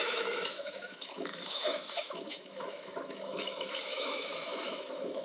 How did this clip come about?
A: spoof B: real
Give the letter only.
A